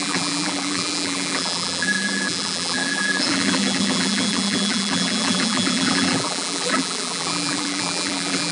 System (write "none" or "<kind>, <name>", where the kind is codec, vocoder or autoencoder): vocoder, BigVGAN v2